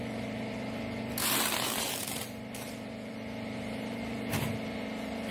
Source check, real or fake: fake